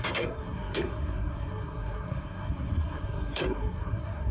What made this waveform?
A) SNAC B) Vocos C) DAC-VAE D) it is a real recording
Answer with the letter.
A